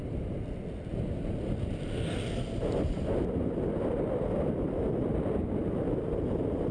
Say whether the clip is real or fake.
real